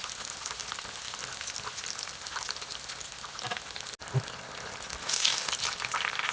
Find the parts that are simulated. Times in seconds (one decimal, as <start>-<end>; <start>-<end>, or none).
5.0-5.5